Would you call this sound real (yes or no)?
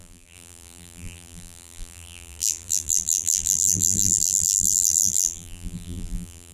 no